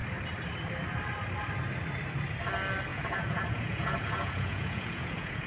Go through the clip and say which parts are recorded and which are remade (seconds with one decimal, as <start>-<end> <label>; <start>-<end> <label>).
0.0-2.9 recorded; 2.9-5.5 remade